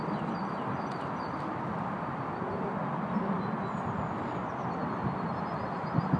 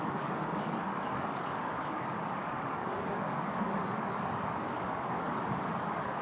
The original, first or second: first